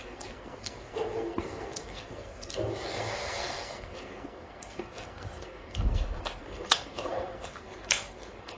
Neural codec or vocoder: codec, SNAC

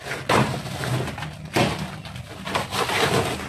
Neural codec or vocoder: none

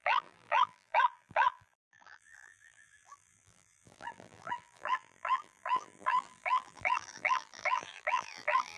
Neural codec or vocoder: vocoder, BigVGAN v2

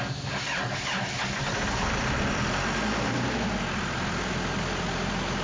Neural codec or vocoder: none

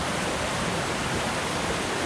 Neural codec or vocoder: none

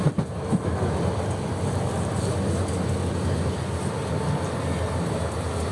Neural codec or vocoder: none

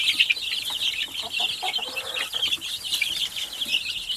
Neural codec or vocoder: none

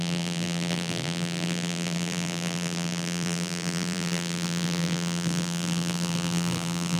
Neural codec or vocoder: vocoder, BigVGAN v2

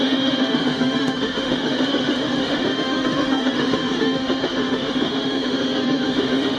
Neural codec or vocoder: autoencoder, DAC-VAE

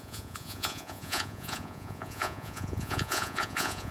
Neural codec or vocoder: vocoder, Vocos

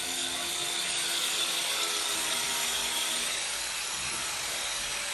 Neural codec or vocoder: codec, DAC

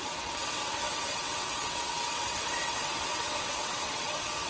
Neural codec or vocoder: vocoder, WaveNeXt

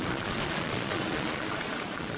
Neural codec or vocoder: vocoder, Vocos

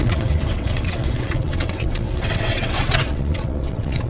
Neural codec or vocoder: vocoder, WaveNeXt